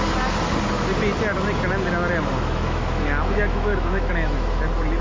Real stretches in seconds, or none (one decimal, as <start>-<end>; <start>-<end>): 0.0-2.3; 4.6-5.0